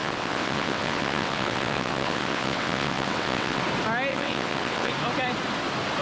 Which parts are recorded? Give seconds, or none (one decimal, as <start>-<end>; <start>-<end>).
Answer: 3.6-4.1; 4.9-6.0